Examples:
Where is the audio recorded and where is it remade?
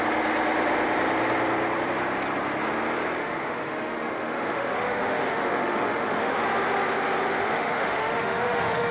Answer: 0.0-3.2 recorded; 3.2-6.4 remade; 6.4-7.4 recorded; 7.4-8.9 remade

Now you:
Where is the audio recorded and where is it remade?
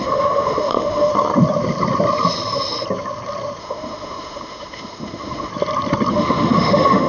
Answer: 0.0-1.1 remade; 1.1-3.6 recorded; 3.6-5.5 remade; 5.5-6.1 recorded; 6.1-7.1 remade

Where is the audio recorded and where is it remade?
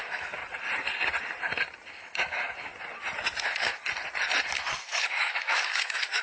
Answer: 0.0-0.4 remade; 0.4-1.9 recorded; 1.9-2.7 remade; 2.7-3.4 recorded; 3.4-3.8 remade; 3.8-4.7 recorded; 4.7-6.2 remade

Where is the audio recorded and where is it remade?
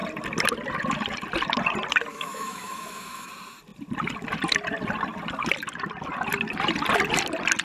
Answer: 0.0-2.1 recorded; 2.1-3.3 remade; 3.3-7.6 recorded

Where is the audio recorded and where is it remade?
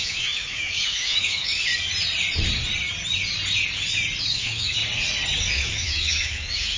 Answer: 0.0-1.7 remade; 1.7-4.2 recorded; 4.2-4.8 remade; 4.8-5.4 recorded; 5.4-6.8 remade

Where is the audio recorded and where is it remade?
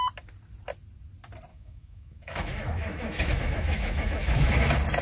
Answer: 0.0-1.5 recorded; 1.5-4.5 remade; 4.5-5.0 recorded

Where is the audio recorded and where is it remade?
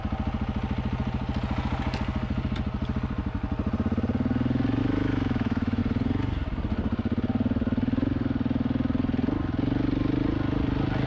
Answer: 0.0-4.8 recorded; 4.8-5.8 remade; 5.8-11.1 recorded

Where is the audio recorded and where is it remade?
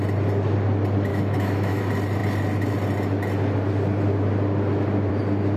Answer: 0.0-1.1 recorded; 1.1-1.8 remade; 1.8-5.6 recorded